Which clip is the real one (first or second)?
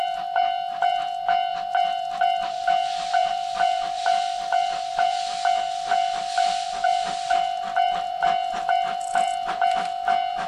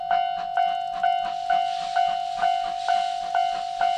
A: second